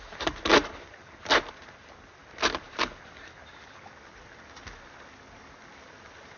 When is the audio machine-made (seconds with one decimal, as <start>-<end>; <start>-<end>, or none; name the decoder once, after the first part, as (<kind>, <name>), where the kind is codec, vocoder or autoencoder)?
none